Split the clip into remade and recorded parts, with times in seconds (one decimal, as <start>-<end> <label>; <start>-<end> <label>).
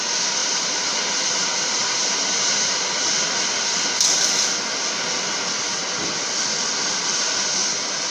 0.0-0.4 recorded; 0.4-2.8 remade; 2.8-8.1 recorded